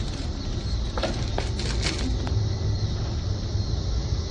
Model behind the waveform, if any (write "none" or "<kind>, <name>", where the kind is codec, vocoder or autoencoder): none